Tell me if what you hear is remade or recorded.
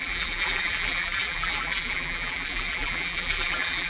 remade